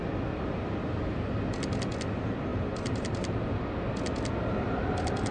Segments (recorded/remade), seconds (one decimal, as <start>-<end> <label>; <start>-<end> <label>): 0.0-2.5 recorded; 2.5-3.6 remade; 3.6-5.3 recorded